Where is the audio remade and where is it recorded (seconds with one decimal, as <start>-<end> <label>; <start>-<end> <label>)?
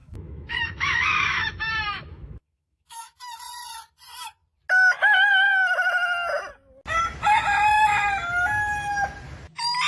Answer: 0.0-3.2 remade; 3.2-9.9 recorded